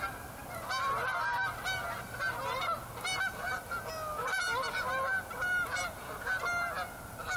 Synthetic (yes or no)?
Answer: yes